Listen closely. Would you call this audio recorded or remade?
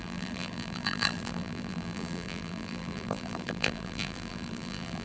remade